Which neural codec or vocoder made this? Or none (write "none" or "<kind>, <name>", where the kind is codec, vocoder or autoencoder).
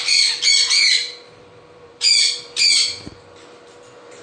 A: vocoder, BigVGAN v2